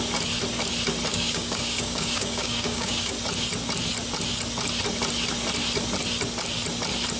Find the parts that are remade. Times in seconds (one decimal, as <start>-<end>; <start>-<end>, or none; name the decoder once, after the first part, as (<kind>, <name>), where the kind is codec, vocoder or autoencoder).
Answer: 1.1-3.1 (codec, DAC)